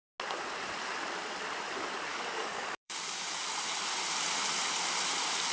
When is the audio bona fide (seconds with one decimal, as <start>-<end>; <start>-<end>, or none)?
0.0-2.1; 3.5-5.5